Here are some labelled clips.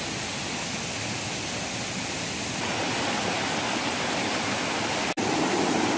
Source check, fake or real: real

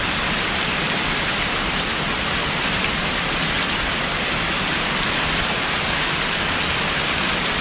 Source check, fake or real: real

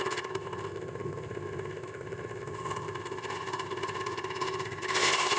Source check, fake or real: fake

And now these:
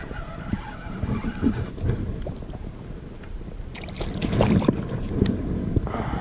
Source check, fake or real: real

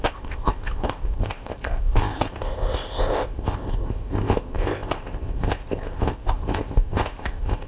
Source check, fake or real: fake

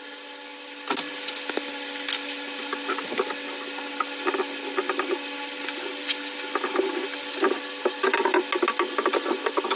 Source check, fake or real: real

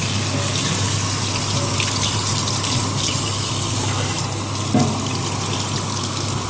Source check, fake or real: real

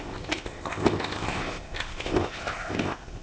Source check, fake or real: fake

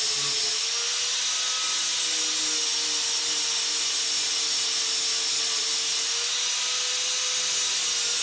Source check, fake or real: real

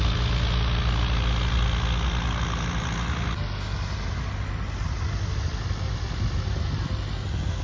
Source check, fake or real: real